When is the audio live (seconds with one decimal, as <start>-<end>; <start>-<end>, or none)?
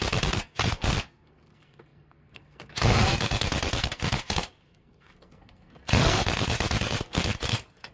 none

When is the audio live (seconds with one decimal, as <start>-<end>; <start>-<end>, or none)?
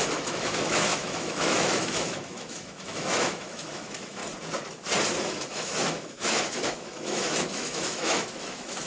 4.2-5.2